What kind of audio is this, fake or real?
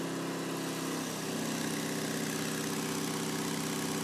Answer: real